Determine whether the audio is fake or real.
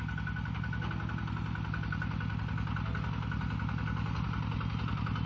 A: real